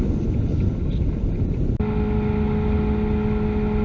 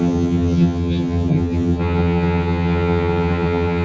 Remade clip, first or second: second